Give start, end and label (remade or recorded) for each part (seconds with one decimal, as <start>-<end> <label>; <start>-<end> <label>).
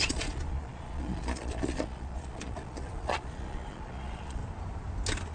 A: 0.0-4.4 remade; 4.4-5.3 recorded